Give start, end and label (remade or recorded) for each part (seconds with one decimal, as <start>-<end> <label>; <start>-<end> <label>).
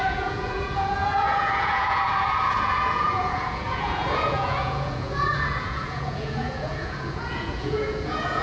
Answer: 0.0-8.4 remade